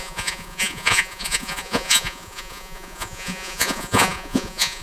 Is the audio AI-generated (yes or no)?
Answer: yes